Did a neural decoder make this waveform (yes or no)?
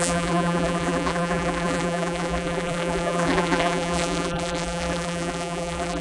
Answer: yes